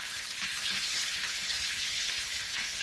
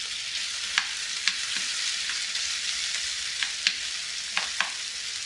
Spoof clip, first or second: first